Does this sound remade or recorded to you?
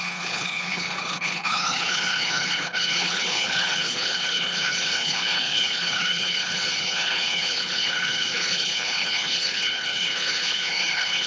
remade